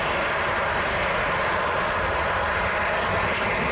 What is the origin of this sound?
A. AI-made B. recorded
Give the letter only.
B